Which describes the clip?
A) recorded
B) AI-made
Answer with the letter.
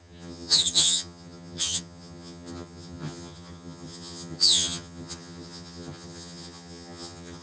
B